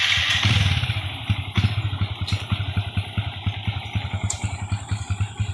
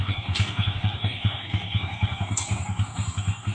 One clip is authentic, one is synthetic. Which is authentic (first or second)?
first